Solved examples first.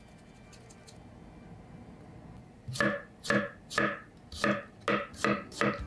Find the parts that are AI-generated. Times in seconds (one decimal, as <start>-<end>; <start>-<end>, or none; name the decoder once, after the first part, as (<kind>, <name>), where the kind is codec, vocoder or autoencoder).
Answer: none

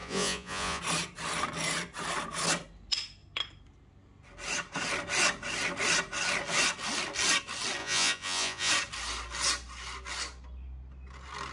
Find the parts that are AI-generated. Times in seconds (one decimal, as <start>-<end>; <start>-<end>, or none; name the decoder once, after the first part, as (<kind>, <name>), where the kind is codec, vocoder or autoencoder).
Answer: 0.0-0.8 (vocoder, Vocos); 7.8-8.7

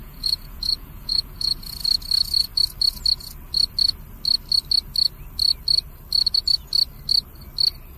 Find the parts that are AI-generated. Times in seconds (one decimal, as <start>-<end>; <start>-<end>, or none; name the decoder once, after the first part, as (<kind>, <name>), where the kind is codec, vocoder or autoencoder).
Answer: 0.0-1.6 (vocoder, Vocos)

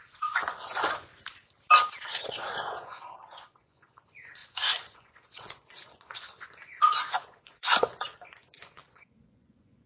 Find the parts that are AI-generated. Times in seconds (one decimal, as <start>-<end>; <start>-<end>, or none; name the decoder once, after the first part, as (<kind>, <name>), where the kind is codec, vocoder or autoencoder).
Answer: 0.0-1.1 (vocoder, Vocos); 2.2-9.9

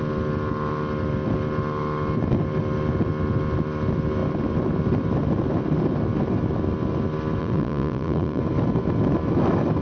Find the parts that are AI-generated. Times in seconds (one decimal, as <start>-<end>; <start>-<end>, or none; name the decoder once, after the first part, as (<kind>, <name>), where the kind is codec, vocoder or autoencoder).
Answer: 7.4-8.4 (vocoder, Vocos)